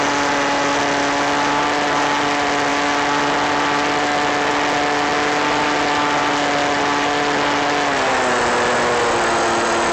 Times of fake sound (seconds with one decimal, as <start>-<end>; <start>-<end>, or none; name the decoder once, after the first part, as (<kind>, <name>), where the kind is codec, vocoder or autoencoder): none